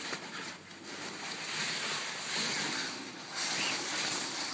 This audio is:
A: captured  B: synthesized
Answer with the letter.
A